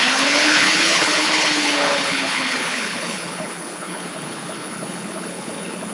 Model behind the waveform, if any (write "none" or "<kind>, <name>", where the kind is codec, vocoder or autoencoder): codec, HILCodec